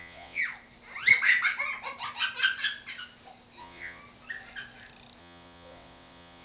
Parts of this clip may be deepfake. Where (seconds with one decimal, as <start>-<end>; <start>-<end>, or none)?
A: 0.0-0.4; 3.6-4.0; 5.2-6.4

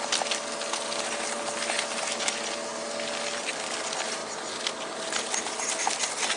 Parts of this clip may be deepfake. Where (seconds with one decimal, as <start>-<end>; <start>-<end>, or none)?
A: none